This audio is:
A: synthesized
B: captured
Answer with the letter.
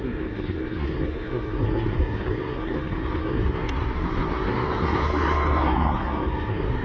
A